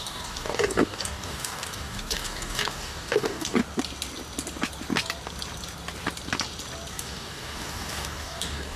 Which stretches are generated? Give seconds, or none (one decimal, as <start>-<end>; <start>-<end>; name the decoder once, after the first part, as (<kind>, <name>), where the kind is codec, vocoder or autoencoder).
0.0-3.6 (codec, DAC); 6.9-8.8